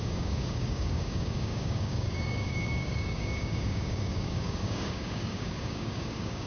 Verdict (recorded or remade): remade